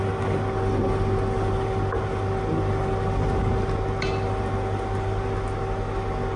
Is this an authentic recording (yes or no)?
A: yes